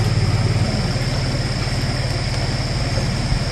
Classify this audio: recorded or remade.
recorded